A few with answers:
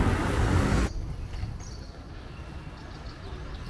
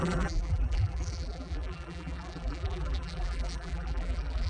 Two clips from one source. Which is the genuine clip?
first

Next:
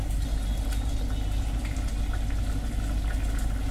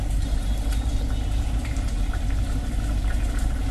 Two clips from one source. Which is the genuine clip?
first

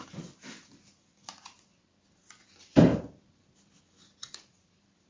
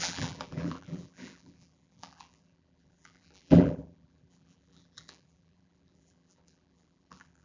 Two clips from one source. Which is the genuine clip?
first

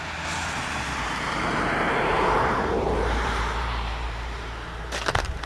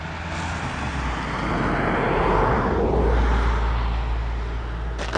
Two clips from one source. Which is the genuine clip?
second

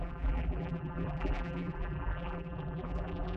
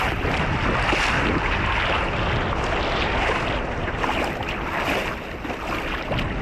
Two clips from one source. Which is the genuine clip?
second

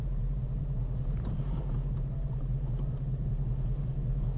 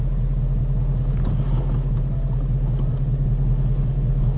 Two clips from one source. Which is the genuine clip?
second